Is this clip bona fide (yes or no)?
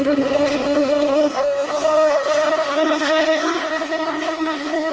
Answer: no